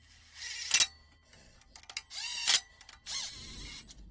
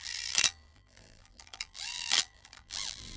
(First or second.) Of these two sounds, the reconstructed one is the second